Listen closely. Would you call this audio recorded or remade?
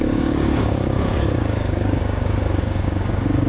remade